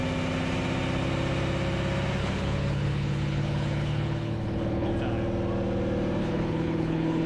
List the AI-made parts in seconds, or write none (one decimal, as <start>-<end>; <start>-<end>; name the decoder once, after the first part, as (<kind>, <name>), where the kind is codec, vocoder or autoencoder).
2.2-4.9 (codec, HILCodec); 6.2-7.3